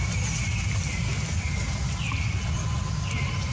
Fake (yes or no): no